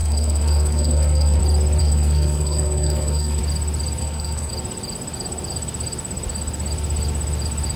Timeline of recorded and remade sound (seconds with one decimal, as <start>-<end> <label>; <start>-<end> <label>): 0.0-1.4 remade; 1.4-1.8 recorded; 1.8-3.4 remade; 3.4-4.0 recorded; 4.0-4.5 remade; 4.5-7.8 recorded

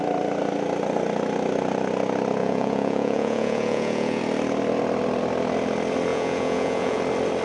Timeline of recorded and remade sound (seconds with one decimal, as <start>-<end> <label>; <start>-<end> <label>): 0.0-2.4 recorded; 2.4-4.2 remade; 4.2-6.1 recorded; 6.1-7.0 remade; 7.0-7.4 recorded

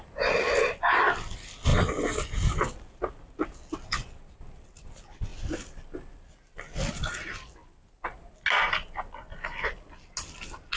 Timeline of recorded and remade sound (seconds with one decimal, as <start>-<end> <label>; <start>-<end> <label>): 0.0-10.8 recorded

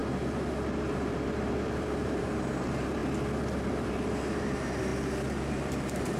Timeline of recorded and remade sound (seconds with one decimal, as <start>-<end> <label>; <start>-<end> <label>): 0.0-0.9 recorded; 0.9-3.0 remade; 3.0-3.7 recorded; 3.7-4.9 remade; 4.9-5.5 recorded; 5.5-6.2 remade

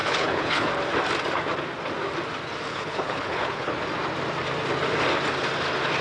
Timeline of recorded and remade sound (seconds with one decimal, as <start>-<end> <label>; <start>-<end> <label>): 0.0-0.7 remade; 0.7-2.7 recorded; 2.7-3.7 remade; 3.7-6.0 recorded

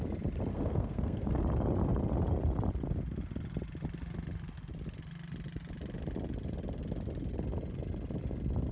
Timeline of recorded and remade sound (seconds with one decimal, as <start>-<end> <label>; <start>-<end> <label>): 0.0-0.5 recorded; 0.5-1.4 remade; 1.4-8.7 recorded

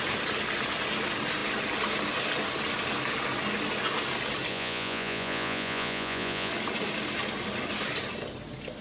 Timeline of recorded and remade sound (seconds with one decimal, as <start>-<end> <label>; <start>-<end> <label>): 0.0-4.5 recorded; 4.5-6.5 remade; 6.5-8.8 recorded